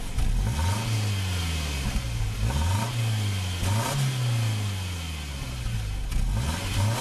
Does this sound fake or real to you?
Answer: real